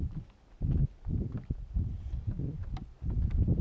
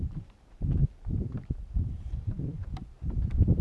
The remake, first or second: second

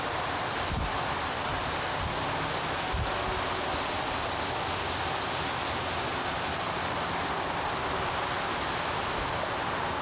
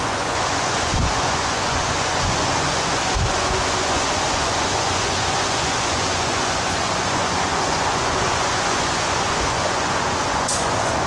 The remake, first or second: second